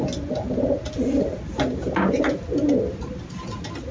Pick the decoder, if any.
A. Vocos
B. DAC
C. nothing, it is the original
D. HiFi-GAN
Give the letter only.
C